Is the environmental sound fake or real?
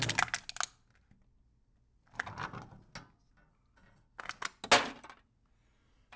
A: real